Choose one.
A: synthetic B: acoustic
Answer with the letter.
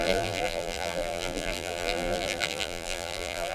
A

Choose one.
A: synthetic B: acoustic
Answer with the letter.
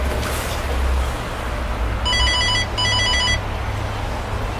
B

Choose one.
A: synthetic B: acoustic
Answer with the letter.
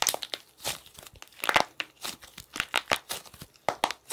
B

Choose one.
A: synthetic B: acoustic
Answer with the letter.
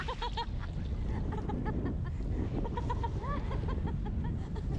B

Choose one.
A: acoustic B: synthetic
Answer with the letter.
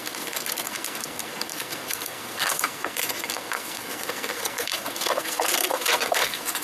B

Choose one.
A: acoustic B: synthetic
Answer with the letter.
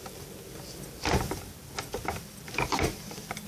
B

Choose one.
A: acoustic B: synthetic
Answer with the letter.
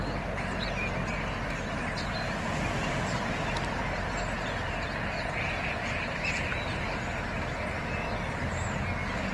A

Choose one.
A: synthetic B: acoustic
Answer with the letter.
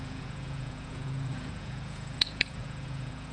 A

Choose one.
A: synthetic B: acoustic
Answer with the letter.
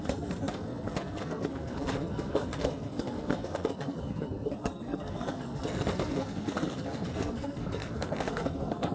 A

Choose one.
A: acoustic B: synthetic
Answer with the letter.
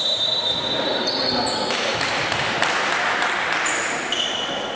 B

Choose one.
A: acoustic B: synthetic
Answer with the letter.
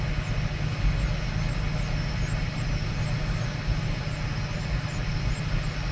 A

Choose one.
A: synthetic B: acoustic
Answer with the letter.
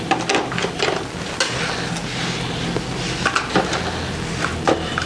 B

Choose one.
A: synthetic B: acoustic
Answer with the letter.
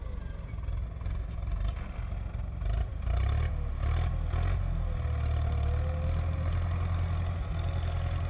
B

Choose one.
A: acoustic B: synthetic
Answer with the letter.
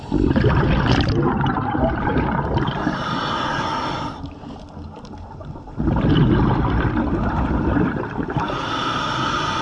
A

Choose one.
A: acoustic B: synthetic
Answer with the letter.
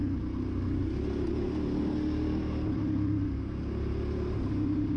A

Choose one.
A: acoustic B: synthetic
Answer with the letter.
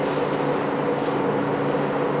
B